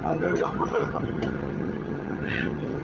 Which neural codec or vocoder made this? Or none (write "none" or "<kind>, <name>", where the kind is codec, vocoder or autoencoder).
vocoder, HiFi-GAN